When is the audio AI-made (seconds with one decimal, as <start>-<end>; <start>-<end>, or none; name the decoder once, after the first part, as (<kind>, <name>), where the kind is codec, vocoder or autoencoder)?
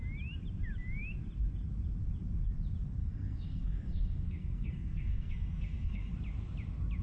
3.0-6.1 (codec, SNAC)